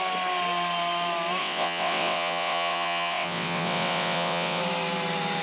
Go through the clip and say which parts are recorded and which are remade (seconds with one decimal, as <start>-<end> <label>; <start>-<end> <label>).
0.0-1.4 recorded; 1.4-4.6 remade; 4.6-5.4 recorded